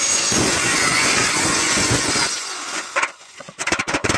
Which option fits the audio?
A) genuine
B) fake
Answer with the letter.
B